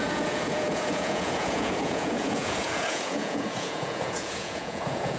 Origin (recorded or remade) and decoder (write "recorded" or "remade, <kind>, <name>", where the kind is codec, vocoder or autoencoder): remade, vocoder, Vocos